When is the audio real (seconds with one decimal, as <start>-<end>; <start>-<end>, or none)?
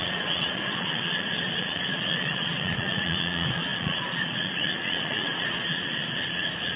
none